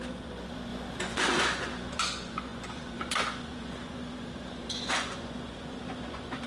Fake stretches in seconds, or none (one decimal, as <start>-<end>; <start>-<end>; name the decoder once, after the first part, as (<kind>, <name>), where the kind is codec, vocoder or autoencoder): 0.0-6.5 (vocoder, Vocos)